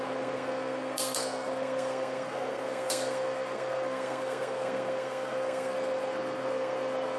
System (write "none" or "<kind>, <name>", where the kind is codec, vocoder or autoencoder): codec, SNAC